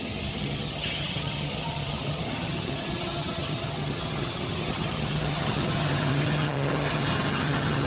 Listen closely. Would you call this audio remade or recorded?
remade